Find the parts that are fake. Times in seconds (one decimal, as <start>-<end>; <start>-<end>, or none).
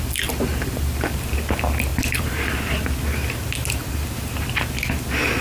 0.5-1.2; 1.9-2.5; 3.2-4.4